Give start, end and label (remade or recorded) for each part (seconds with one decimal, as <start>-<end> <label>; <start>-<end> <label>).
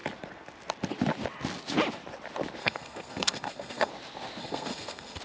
0.0-2.6 recorded; 2.6-3.9 remade; 3.9-4.4 recorded; 4.4-5.2 remade